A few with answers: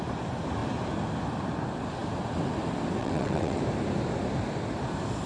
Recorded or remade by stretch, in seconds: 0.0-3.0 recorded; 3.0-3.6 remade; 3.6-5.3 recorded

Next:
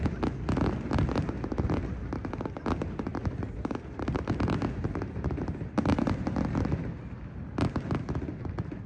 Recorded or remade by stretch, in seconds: 0.0-3.1 recorded; 3.1-6.2 remade; 6.2-8.9 recorded